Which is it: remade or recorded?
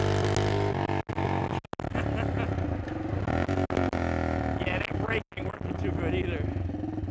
recorded